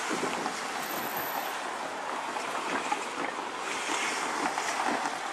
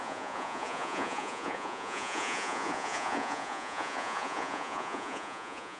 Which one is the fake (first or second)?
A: second